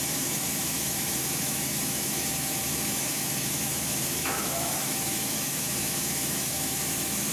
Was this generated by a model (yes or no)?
yes